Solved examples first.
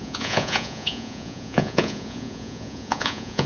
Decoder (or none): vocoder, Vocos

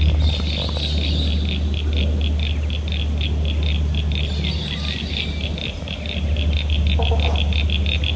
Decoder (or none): none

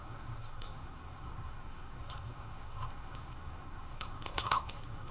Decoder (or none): codec, SNAC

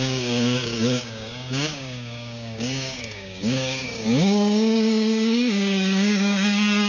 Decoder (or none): codec, DAC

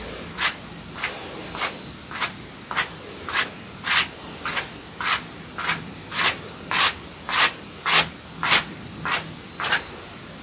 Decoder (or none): none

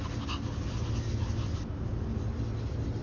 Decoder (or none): none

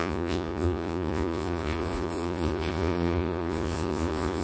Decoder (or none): vocoder, Vocos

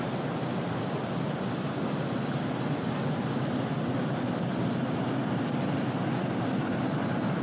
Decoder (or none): none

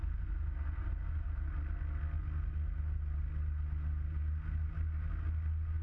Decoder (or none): none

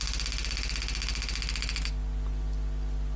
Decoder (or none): none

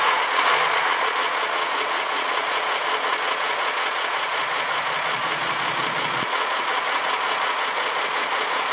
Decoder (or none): vocoder, Vocos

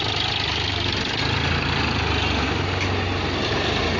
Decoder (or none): none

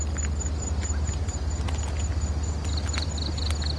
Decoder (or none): none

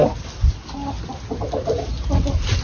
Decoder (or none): none